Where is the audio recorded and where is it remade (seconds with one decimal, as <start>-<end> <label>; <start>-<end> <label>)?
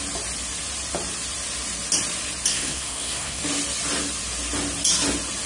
0.0-2.5 recorded; 2.5-3.4 remade; 3.4-5.5 recorded